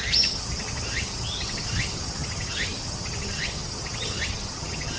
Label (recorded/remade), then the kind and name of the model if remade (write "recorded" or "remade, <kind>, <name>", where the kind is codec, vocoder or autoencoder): remade, vocoder, HiFi-GAN